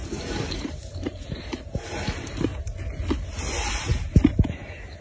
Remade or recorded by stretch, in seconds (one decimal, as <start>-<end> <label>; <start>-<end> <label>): 0.0-2.5 remade; 2.5-3.4 recorded; 3.4-5.0 remade